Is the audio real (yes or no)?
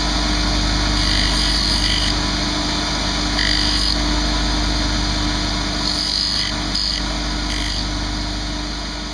yes